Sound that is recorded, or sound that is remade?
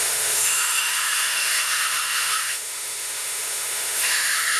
remade